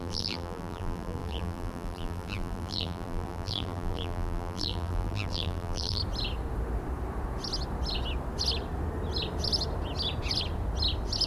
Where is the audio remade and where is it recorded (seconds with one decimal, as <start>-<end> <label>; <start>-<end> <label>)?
0.0-6.0 remade; 6.0-11.3 recorded